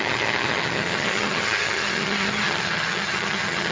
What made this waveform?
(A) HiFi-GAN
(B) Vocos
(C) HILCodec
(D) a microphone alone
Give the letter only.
A